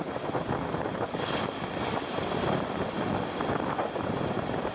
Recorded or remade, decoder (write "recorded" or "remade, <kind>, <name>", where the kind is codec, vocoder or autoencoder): recorded